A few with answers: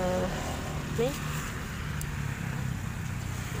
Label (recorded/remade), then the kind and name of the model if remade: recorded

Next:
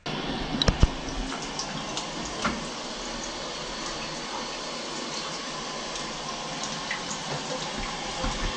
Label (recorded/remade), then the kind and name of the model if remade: recorded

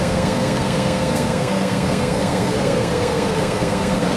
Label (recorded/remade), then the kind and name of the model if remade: remade, codec, SNAC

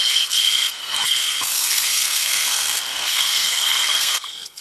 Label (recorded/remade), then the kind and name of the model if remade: remade, codec, SNAC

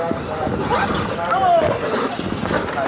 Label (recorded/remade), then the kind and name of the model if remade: recorded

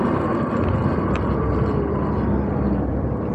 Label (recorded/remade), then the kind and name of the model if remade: recorded